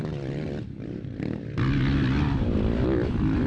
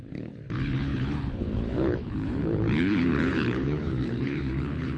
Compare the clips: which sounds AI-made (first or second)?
second